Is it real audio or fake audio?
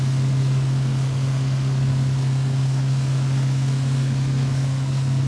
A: fake